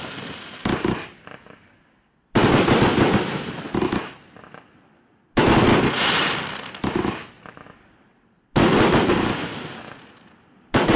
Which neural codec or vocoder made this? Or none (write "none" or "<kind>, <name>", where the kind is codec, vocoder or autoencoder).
none